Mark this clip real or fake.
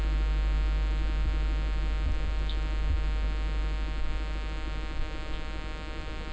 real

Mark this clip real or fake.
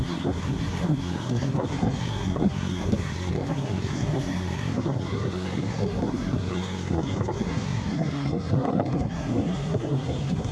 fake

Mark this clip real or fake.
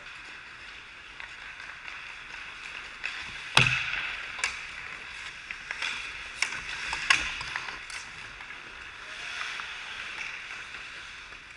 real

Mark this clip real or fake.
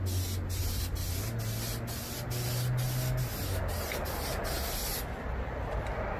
real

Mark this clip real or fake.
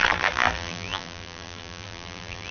fake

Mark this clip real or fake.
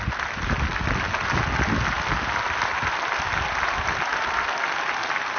real